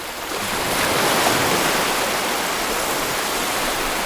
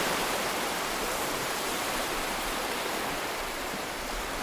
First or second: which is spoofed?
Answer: second